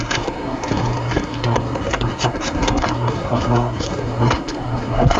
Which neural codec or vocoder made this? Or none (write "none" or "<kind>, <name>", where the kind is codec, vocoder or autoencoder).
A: codec, SNAC